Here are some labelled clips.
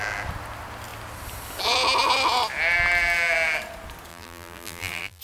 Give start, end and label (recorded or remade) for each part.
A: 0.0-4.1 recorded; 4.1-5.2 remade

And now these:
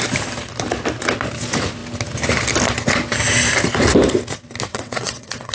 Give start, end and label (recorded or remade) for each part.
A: 0.0-4.7 recorded; 4.7-5.5 remade

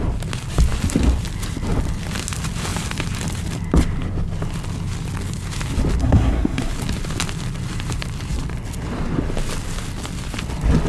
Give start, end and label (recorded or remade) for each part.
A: 0.0-6.0 recorded; 6.0-6.7 remade; 6.7-10.9 recorded